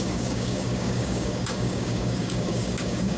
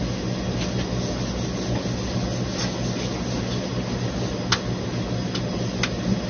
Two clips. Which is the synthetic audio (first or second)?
first